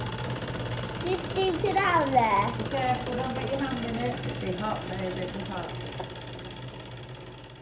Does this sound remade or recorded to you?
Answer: recorded